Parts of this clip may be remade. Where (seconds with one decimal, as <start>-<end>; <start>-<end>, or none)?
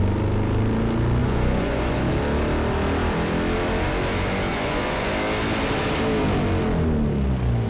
1.2-2.1; 4.5-5.1